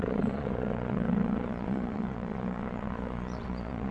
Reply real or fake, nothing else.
fake